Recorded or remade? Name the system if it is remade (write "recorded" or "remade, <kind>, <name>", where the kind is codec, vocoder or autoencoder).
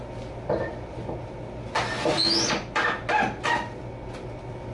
recorded